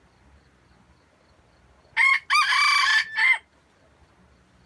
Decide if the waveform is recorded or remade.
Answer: recorded